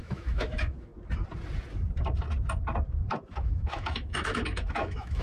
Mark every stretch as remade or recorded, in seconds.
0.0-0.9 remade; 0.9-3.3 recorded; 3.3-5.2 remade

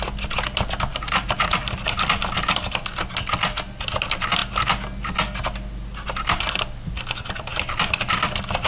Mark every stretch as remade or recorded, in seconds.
0.0-8.7 recorded

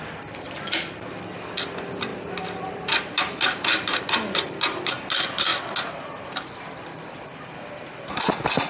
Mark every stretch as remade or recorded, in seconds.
0.0-2.1 recorded; 2.1-4.0 remade; 4.0-8.7 recorded